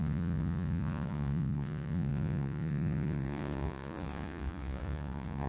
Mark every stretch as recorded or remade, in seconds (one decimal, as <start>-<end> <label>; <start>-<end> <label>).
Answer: 0.0-5.5 remade

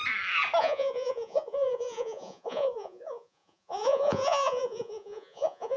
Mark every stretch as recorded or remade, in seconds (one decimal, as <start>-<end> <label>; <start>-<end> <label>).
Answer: 0.0-0.6 recorded; 0.6-5.8 remade

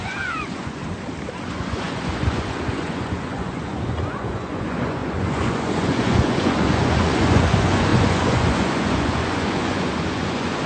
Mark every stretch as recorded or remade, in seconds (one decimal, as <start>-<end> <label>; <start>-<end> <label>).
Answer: 0.0-0.8 remade; 0.8-1.4 recorded; 1.4-10.7 remade